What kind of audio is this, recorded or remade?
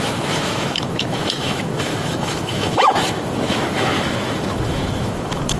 remade